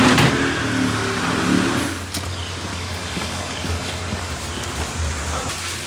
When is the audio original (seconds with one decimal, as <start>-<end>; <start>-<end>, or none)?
0.0-2.7; 4.3-5.9